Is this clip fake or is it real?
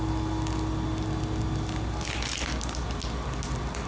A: real